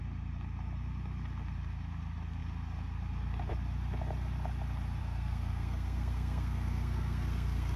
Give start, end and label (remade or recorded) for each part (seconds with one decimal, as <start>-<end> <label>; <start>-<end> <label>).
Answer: 0.0-5.0 recorded; 5.0-7.8 remade